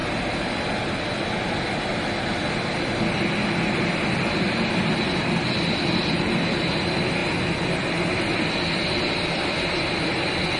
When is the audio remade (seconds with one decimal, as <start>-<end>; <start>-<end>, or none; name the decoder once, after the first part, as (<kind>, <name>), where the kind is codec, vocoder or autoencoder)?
none